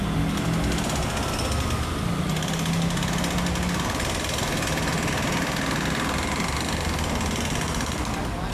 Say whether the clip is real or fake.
real